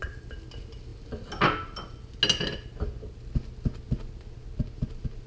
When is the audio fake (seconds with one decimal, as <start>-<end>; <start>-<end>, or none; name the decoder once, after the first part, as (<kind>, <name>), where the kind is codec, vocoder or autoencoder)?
none